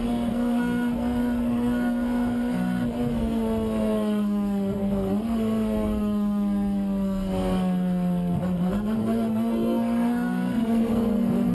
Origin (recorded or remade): remade